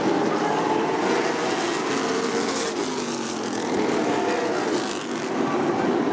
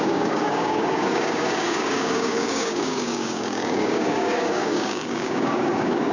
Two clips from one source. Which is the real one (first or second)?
first